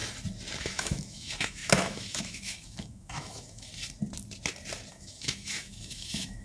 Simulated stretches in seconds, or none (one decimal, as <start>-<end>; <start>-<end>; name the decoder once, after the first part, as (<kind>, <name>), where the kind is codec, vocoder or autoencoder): 0.6-3.7 (autoencoder, DAC-VAE); 4.9-6.4